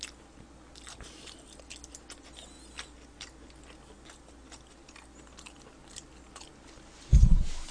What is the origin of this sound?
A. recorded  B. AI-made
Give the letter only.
A